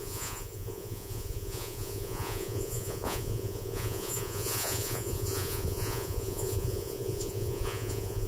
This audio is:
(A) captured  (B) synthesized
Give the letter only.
B